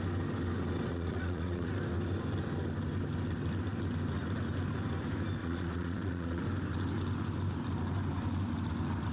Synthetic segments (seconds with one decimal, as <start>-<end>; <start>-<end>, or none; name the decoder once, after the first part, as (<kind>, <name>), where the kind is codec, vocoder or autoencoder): 0.9-1.7 (vocoder, Vocos); 5.4-6.4